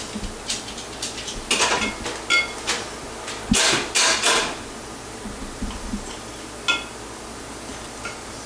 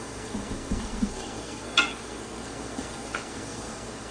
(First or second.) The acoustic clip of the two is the first